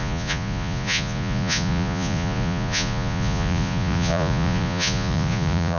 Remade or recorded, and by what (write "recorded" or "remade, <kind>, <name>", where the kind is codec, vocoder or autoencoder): remade, vocoder, Vocos